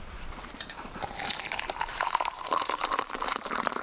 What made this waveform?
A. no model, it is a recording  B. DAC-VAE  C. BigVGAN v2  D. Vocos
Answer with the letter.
C